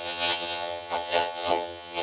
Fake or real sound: fake